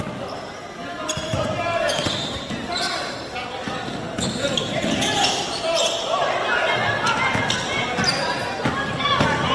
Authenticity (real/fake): real